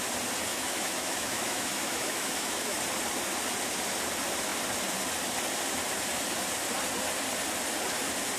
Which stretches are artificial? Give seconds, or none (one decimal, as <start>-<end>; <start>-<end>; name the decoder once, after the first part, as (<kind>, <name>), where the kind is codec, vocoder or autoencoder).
0.5-2.8 (autoencoder, DAC-VAE)